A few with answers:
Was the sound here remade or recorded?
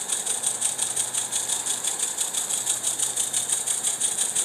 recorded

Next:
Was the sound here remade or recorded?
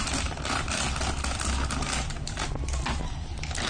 recorded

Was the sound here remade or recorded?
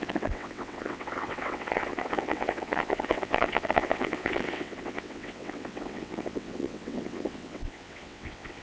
remade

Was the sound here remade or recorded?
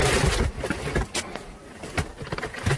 recorded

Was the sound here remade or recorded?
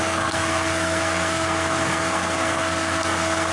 remade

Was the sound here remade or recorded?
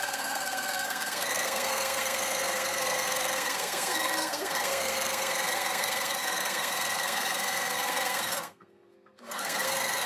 remade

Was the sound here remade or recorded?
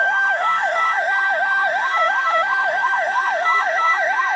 remade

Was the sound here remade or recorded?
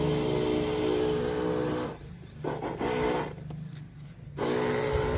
recorded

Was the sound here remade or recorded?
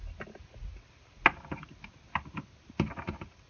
recorded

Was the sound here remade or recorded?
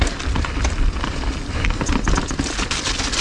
recorded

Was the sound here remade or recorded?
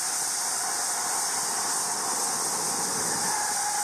recorded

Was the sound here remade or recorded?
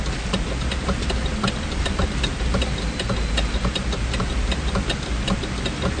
recorded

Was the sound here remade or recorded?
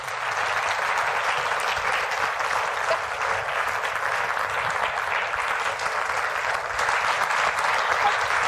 recorded